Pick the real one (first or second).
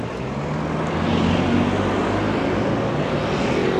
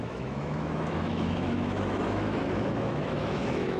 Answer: first